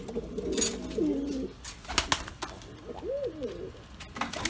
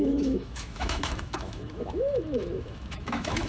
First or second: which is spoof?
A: second